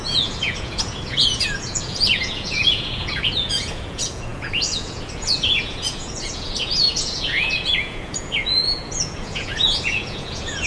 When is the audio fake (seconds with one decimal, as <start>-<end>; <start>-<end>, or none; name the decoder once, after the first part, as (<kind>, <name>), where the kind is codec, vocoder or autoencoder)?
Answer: 0.0-10.7 (vocoder, Vocos)